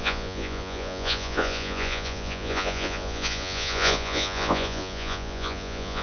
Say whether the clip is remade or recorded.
remade